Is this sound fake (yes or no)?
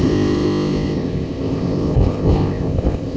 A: yes